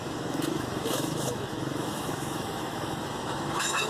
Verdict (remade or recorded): remade